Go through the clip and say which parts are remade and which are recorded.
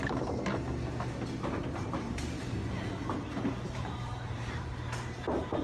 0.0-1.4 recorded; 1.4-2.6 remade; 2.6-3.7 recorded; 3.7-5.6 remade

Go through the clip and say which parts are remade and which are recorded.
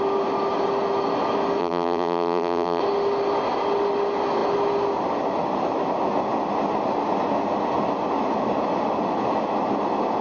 0.0-1.6 recorded; 1.6-2.8 remade; 2.8-10.2 recorded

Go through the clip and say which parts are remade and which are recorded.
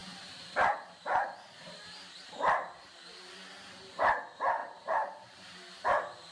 0.0-3.2 remade; 3.2-4.6 recorded; 4.6-5.7 remade; 5.7-6.3 recorded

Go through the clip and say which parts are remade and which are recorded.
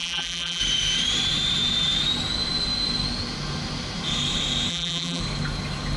0.0-0.6 remade; 0.6-4.7 recorded; 4.7-5.2 remade; 5.2-6.0 recorded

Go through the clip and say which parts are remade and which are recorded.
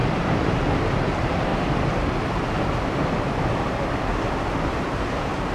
0.0-1.5 remade; 1.5-4.8 recorded; 4.8-5.5 remade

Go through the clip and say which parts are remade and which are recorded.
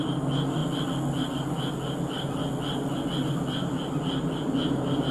0.0-5.1 recorded